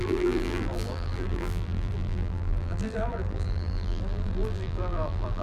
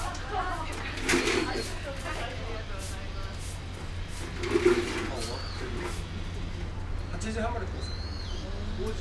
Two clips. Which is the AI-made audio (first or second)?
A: first